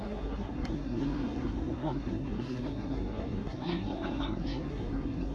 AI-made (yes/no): yes